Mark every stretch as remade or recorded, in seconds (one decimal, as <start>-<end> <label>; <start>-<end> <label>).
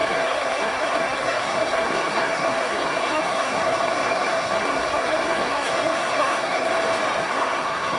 0.0-6.7 remade; 6.7-7.2 recorded; 7.2-8.0 remade